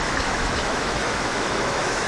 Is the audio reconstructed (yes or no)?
yes